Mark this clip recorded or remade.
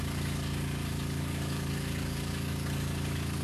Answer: remade